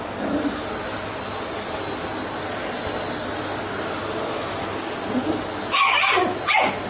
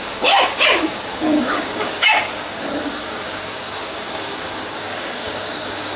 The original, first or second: first